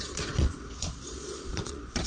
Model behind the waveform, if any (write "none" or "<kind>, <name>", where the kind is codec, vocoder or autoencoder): vocoder, Vocos